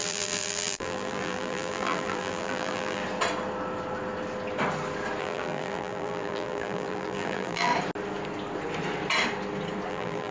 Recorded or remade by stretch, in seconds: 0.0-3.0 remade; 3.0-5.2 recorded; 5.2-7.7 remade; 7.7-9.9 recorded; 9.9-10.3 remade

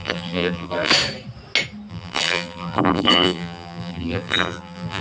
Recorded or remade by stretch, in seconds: 0.0-0.9 remade; 0.9-1.9 recorded; 1.9-5.0 remade

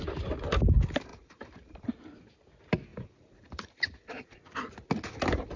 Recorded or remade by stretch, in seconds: 0.0-1.1 recorded; 1.1-1.9 remade; 1.9-2.9 recorded; 2.9-4.4 remade; 4.4-5.6 recorded

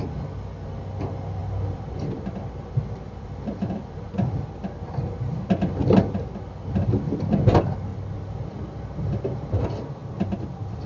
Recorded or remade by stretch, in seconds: 0.0-1.4 recorded; 1.4-6.2 remade; 6.2-7.9 recorded; 7.9-9.4 remade; 9.4-10.9 recorded

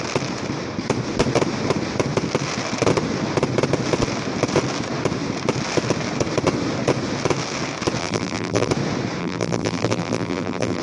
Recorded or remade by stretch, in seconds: 0.0-8.0 recorded; 8.0-8.7 remade; 8.7-9.2 recorded; 9.2-10.8 remade